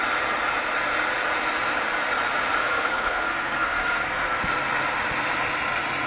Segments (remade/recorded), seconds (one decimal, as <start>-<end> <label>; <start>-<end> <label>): 0.0-2.6 recorded; 2.6-4.4 remade; 4.4-6.1 recorded